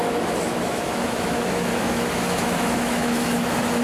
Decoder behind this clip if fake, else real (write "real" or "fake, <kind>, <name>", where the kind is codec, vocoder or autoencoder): fake, autoencoder, DAC-VAE